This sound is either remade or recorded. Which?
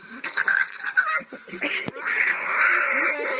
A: remade